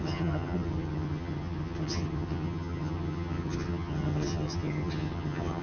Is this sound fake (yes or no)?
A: yes